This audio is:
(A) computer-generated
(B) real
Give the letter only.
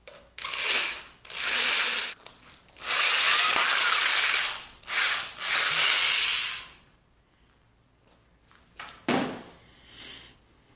B